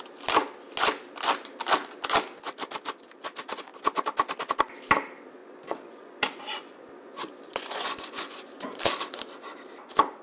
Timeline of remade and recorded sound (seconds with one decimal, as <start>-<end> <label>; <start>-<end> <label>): 0.0-5.4 recorded; 5.4-8.8 remade; 8.8-10.2 recorded